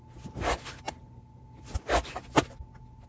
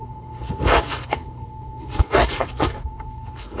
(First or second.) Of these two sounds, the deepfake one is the second